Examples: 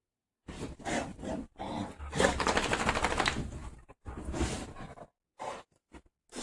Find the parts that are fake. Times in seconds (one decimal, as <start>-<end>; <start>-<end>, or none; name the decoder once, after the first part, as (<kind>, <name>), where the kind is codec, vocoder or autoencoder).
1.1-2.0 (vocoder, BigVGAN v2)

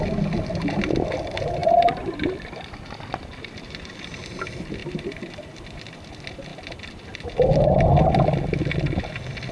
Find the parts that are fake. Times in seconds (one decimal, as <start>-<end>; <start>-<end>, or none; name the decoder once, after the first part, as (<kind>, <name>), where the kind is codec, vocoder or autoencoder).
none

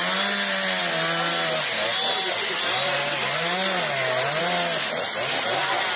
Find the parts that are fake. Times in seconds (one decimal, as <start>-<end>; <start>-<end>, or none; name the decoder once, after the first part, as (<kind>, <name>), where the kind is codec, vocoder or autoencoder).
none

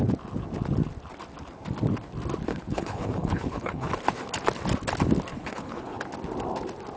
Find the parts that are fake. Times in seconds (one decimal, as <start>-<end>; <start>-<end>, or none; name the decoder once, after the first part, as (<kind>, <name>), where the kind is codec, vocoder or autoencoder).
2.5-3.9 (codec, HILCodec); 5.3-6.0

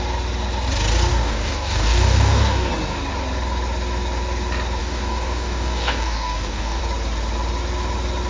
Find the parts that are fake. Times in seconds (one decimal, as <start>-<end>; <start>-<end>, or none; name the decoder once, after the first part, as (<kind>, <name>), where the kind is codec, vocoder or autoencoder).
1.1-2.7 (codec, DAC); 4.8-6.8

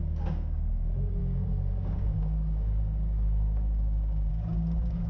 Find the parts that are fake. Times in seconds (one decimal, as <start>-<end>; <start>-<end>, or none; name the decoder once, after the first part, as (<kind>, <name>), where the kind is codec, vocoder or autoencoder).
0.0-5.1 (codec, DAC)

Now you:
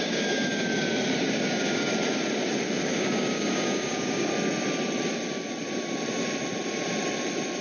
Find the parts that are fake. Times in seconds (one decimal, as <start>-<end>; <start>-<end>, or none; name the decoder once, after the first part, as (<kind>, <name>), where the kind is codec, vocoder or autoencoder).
0.0-0.7 (codec, DAC); 1.2-1.9; 2.8-4.3

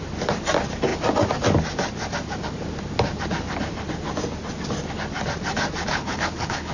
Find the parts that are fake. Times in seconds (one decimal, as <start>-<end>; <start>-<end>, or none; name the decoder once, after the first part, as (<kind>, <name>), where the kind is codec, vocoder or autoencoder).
5.9-6.7 (codec, HILCodec)